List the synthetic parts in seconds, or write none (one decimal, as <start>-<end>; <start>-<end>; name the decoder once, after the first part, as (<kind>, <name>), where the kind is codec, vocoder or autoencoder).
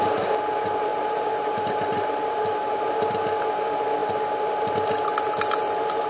0.9-2.7 (vocoder, BigVGAN v2)